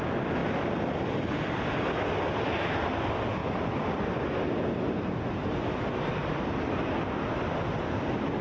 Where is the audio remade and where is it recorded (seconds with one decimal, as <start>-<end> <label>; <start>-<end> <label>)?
0.0-8.4 recorded